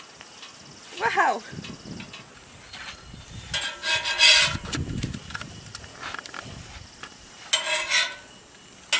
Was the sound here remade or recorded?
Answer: recorded